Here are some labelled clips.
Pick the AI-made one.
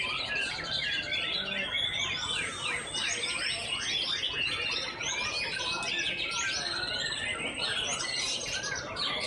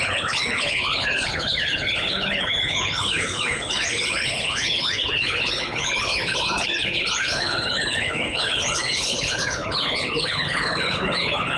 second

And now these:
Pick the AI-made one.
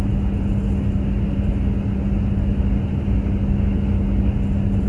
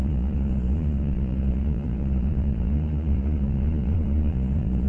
second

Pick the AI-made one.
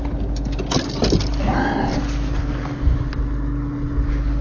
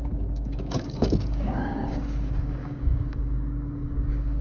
second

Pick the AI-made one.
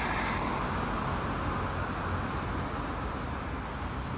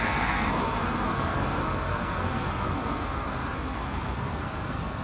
second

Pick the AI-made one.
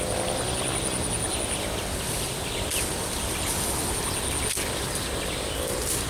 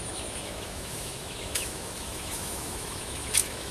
second